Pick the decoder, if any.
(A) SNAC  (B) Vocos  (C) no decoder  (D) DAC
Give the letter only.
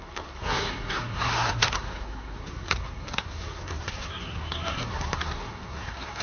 A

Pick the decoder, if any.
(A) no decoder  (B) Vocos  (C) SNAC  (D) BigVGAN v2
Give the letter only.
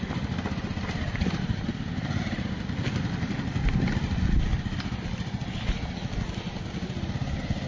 A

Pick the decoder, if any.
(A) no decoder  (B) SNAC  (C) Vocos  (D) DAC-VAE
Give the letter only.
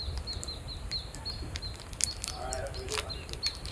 A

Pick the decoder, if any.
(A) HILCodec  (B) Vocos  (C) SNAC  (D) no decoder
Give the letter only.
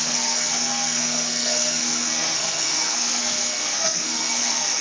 C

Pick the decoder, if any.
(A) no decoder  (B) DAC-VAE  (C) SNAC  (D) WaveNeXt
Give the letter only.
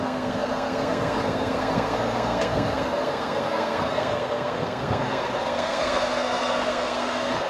C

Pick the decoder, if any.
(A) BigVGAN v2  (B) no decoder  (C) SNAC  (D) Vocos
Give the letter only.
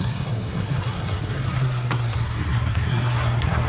C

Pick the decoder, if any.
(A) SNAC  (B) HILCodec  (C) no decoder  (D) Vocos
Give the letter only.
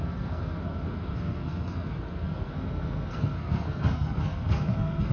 A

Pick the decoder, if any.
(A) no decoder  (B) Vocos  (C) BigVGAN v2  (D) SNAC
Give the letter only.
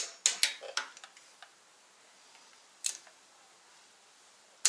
A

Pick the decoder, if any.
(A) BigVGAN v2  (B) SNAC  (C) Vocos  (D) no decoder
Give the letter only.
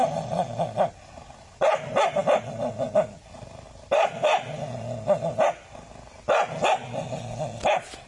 D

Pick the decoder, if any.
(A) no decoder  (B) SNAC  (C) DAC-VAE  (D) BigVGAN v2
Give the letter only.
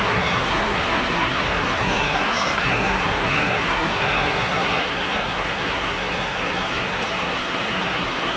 B